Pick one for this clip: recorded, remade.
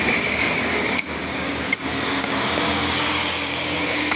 remade